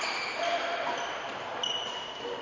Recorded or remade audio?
recorded